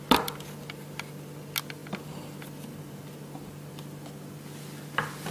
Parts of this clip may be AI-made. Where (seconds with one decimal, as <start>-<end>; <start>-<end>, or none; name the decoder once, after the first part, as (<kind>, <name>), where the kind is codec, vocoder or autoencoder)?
none